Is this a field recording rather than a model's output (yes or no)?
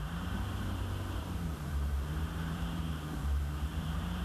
no